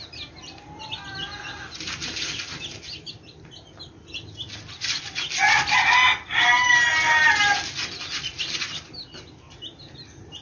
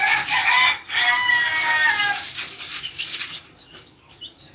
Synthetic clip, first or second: second